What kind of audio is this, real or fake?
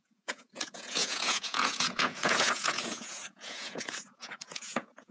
fake